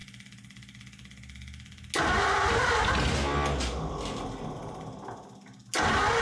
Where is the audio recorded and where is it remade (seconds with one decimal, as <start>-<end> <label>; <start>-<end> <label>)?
0.0-6.2 recorded